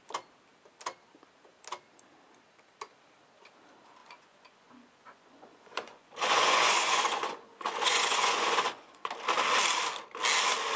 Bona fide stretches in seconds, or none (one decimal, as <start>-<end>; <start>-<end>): 0.0-4.0; 9.1-10.8